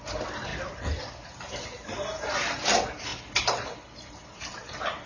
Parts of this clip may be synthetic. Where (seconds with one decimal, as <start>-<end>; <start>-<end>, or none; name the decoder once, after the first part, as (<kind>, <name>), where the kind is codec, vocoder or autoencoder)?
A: 0.5-1.0 (vocoder, BigVGAN v2)